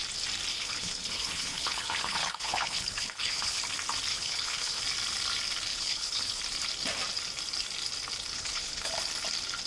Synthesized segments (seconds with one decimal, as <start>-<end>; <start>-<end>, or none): 0.5-3.6; 4.1-4.8; 5.7-6.4; 8.3-8.9